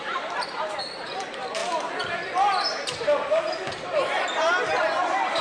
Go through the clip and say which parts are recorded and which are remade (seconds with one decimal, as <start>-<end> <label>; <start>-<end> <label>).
0.0-1.6 remade; 1.6-4.8 recorded; 4.8-5.4 remade